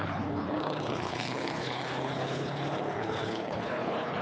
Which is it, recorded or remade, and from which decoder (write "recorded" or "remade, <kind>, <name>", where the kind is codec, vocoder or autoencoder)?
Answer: remade, codec, HILCodec